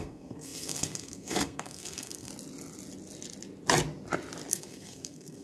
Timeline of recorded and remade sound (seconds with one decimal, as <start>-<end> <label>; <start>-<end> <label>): 0.0-2.3 remade; 2.3-4.5 recorded; 4.5-5.4 remade